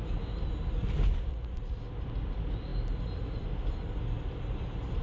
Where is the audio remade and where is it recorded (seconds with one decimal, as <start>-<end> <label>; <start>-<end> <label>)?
0.0-1.3 recorded; 1.3-1.8 remade; 1.8-5.0 recorded